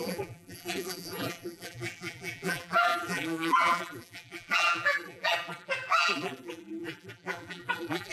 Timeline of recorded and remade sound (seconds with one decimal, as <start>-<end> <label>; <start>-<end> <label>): 0.0-8.1 remade